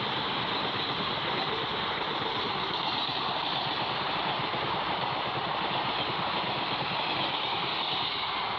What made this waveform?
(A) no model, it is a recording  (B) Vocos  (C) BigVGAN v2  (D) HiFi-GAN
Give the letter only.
A